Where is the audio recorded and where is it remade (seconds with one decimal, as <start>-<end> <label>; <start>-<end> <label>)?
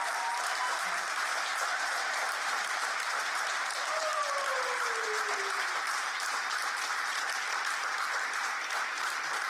0.0-9.5 remade